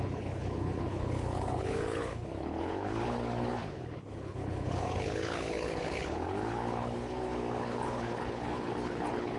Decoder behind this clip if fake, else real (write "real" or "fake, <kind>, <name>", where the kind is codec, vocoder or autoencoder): fake, codec, HILCodec